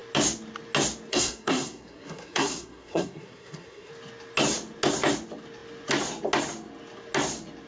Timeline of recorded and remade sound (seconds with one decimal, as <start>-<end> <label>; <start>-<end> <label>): 0.0-1.1 recorded; 1.1-3.9 remade; 3.9-7.7 recorded